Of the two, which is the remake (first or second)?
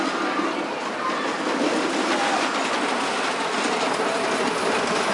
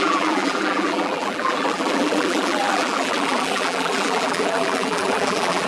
second